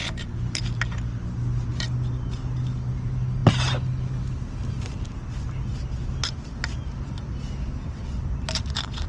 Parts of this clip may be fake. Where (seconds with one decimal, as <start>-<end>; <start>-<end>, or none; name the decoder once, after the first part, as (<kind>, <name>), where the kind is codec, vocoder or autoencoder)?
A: 0.0-0.6 (vocoder, BigVGAN v2)

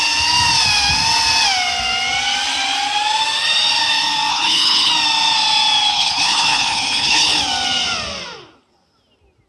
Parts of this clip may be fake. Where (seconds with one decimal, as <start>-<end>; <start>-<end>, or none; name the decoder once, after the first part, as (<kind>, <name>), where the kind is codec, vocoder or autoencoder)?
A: 4.3-4.9 (codec, HILCodec); 5.9-7.4

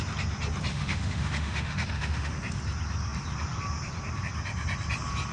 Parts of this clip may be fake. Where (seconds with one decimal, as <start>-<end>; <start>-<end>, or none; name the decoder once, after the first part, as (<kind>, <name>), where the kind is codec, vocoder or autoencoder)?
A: 0.7-2.3 (autoencoder, DAC-VAE)

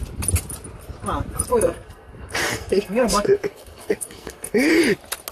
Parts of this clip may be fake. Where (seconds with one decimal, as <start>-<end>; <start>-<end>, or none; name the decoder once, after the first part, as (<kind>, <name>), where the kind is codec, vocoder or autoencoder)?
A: 1.5-4.7 (codec, SNAC)

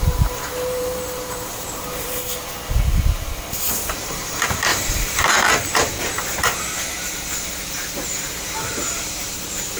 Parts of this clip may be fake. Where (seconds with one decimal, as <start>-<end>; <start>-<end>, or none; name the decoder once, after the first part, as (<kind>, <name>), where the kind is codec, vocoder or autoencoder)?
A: 0.0-2.2 (vocoder, BigVGAN v2); 3.7-9.8

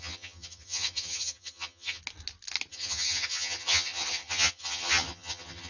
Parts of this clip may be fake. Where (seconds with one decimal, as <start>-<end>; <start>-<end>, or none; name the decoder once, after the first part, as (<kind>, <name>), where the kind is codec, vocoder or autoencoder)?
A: 0.0-2.0 (vocoder, HiFi-GAN); 2.7-5.7

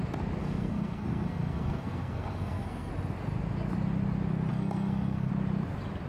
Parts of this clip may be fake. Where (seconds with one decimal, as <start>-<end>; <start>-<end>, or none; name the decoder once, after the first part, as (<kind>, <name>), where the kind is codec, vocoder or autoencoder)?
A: 0.4-2.9 (codec, SNAC); 4.5-5.3